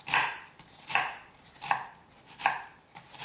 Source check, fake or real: real